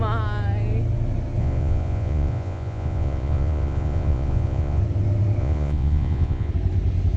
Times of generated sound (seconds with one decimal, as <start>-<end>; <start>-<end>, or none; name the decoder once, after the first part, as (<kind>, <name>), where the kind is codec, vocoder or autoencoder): 1.4-4.8 (vocoder, Vocos); 5.4-6.5

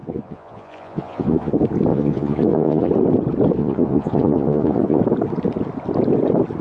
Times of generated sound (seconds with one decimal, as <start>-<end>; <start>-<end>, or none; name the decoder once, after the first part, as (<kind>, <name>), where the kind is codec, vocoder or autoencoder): 0.0-1.5 (vocoder, Vocos); 1.9-2.9; 3.6-5.0

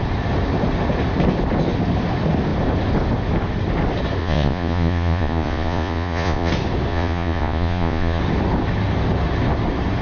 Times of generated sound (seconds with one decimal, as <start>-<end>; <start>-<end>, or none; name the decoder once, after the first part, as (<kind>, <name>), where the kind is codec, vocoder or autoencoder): 4.2-6.5 (vocoder, Vocos); 6.9-8.2

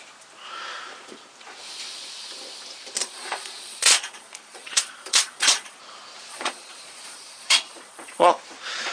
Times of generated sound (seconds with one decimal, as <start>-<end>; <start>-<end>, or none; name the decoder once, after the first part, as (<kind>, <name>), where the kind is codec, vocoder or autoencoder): 3.0-5.8 (vocoder, Vocos); 6.3-8.4